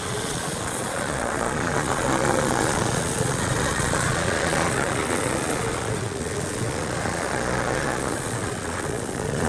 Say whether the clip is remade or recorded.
remade